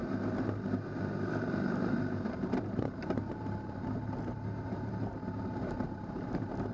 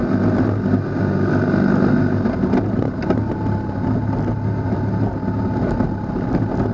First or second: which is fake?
first